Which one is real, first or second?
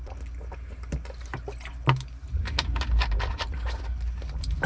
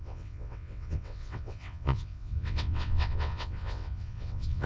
first